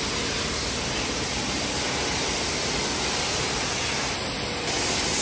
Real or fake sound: real